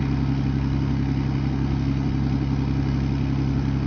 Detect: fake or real real